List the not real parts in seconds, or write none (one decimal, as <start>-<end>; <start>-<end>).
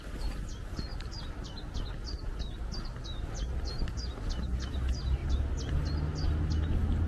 0.9-1.8